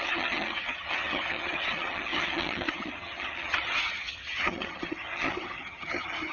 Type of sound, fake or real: fake